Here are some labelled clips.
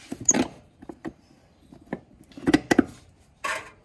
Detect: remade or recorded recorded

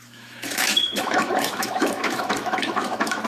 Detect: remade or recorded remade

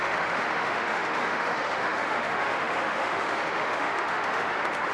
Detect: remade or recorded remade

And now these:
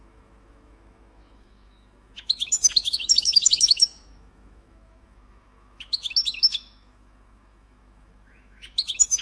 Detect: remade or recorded remade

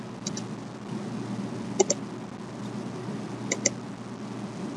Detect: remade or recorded recorded